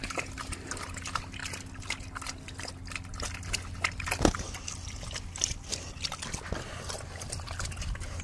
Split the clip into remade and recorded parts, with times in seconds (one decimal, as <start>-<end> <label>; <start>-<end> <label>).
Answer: 0.0-8.2 recorded